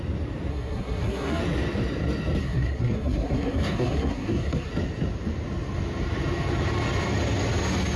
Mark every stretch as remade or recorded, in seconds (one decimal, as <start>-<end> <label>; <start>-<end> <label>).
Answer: 0.0-0.5 recorded; 0.5-1.4 remade; 1.4-2.4 recorded; 2.4-4.7 remade; 4.7-8.0 recorded